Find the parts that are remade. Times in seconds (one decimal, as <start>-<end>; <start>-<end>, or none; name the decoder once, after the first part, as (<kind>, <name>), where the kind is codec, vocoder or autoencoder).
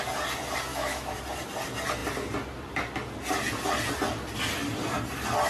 0.7-1.2 (autoencoder, DAC-VAE)